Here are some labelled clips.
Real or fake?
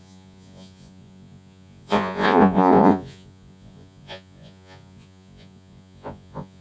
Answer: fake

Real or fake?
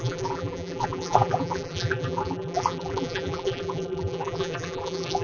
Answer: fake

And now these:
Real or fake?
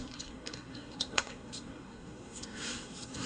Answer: fake